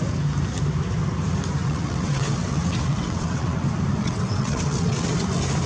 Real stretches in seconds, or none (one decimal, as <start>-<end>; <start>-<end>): 0.0-1.6; 3.6-4.0; 5.2-5.7